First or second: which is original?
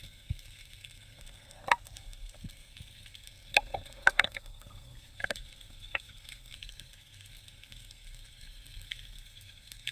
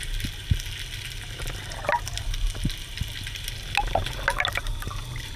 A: second